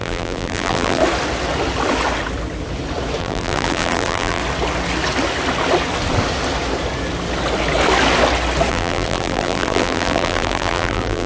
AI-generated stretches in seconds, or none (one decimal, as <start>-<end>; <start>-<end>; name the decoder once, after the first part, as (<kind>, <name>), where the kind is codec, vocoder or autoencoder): 0.0-1.0 (vocoder, BigVGAN v2); 3.2-4.4; 8.7-11.3